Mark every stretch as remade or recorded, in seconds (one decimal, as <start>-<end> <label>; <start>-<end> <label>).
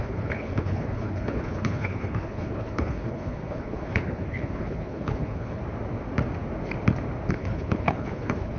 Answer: 0.0-5.6 remade; 5.6-7.3 recorded; 7.3-8.6 remade